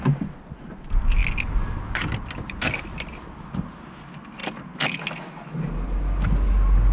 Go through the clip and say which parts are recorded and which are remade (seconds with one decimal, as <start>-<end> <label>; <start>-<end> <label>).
0.0-6.9 recorded